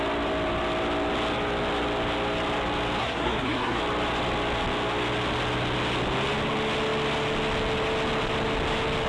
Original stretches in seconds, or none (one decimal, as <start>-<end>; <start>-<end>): 0.0-3.0; 3.8-9.1